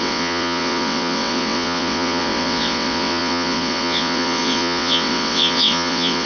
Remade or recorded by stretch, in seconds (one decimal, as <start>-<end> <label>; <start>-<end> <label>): 0.0-6.3 remade